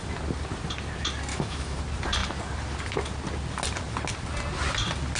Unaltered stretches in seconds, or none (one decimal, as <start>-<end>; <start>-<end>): 0.0-1.3; 1.8-5.2